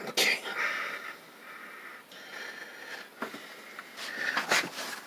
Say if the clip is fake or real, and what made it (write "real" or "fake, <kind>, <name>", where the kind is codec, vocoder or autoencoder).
real